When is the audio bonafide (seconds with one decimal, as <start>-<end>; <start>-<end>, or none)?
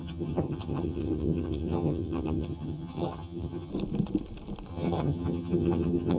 3.7-4.7